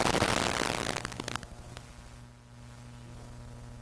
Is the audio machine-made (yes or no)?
no